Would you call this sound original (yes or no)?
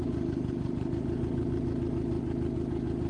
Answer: yes